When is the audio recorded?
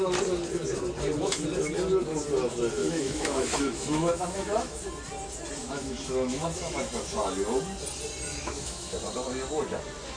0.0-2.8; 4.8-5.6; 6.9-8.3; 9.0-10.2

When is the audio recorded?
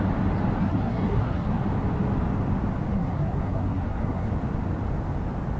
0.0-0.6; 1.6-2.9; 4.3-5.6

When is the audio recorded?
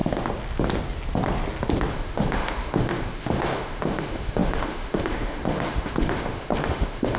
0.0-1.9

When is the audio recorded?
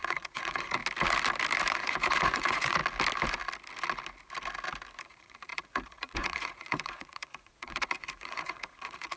0.8-1.7; 2.8-5.0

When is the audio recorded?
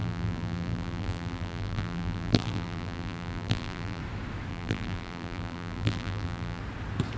4.0-4.5; 6.6-7.2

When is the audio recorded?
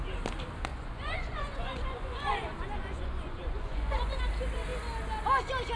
0.0-0.7; 4.2-5.8